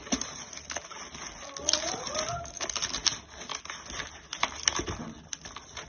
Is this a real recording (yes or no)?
yes